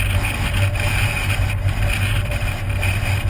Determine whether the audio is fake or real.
real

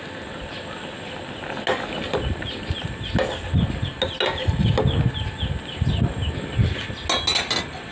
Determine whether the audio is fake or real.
real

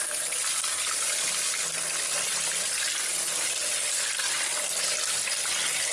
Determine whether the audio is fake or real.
real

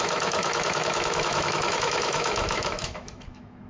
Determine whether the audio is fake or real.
fake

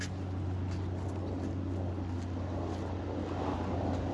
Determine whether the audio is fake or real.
real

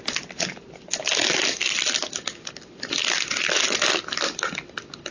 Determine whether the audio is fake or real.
real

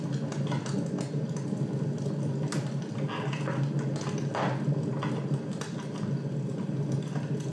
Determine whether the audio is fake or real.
real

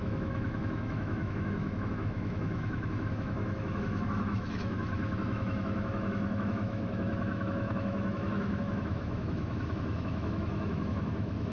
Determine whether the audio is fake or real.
fake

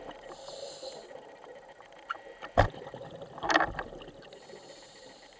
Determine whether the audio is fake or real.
real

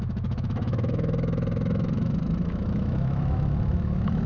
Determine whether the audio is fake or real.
fake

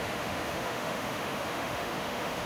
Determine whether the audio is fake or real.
fake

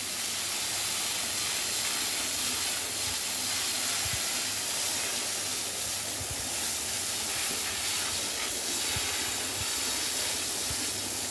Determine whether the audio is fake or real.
real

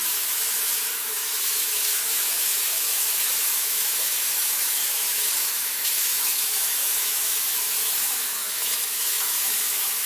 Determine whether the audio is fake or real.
fake